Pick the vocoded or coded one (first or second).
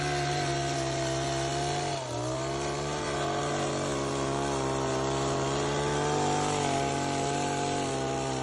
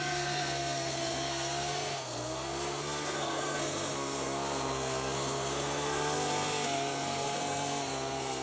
second